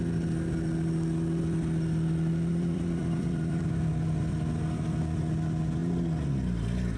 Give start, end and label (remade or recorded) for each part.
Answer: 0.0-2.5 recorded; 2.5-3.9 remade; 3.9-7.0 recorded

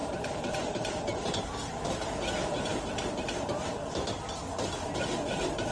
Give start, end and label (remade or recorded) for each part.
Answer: 0.0-1.5 remade; 1.5-5.7 recorded